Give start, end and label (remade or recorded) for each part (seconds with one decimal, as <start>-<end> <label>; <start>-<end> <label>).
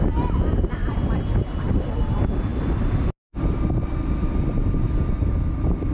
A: 0.0-0.8 recorded; 0.8-2.0 remade; 2.0-5.9 recorded